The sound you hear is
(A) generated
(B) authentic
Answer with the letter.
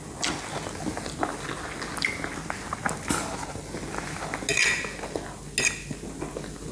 B